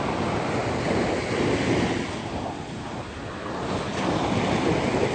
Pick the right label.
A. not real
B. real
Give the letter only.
B